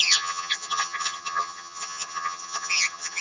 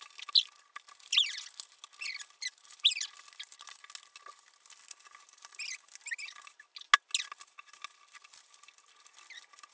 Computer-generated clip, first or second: first